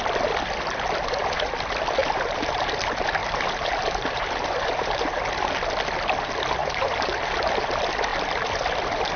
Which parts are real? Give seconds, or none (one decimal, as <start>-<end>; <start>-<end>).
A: 0.0-2.0; 2.7-3.2; 5.2-6.6; 7.5-9.2